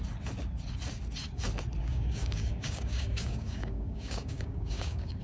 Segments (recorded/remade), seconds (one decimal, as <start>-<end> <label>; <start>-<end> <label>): 0.0-1.8 recorded; 1.8-5.2 remade